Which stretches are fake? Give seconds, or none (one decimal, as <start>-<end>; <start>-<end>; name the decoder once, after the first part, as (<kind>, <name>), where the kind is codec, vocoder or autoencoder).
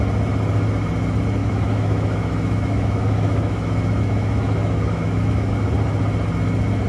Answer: 1.4-5.5 (autoencoder, DAC-VAE)